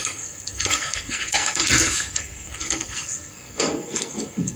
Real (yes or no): no